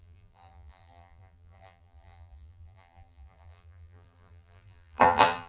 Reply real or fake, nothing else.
fake